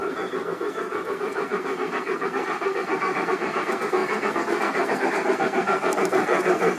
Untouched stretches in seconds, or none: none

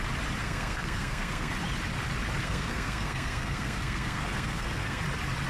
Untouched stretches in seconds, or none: 0.0-0.4; 1.5-2.4; 5.0-5.5